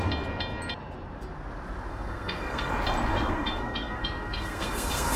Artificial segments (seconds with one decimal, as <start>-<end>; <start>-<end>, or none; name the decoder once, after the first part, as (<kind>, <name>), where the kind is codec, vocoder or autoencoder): 1.9-2.7 (codec, SNAC); 3.1-5.2